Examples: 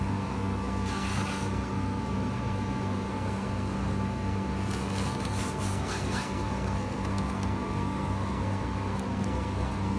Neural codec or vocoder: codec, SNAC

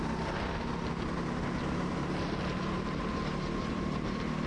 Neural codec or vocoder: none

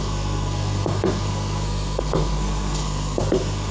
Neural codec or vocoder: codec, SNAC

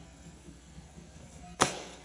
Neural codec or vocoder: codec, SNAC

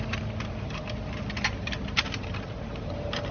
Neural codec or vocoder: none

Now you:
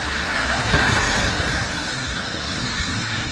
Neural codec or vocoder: codec, SNAC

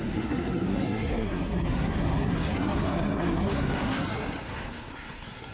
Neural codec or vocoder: codec, SNAC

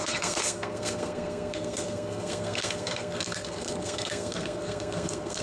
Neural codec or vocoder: codec, SNAC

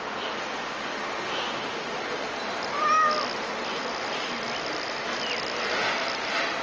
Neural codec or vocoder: none